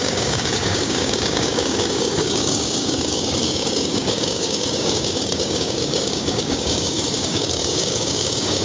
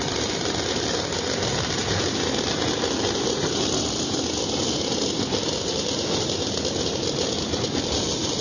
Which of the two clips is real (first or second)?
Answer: second